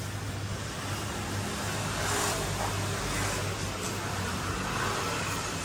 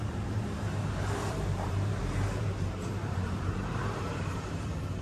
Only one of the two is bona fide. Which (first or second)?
first